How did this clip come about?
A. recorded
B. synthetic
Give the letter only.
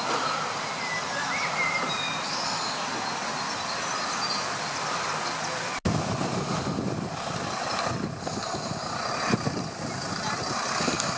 A